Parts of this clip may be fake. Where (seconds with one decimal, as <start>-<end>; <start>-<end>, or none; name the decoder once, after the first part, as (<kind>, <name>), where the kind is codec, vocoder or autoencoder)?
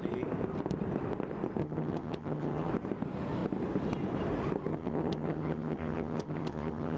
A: 1.6-2.7 (vocoder, HiFi-GAN); 4.7-7.0